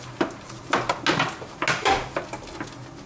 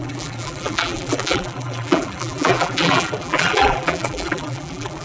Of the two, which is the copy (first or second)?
second